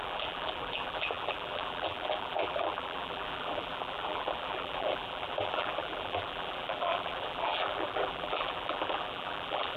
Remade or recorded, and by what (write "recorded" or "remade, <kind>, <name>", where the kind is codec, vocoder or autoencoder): remade, vocoder, BigVGAN v2